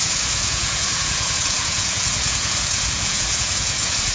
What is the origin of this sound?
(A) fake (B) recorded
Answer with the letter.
A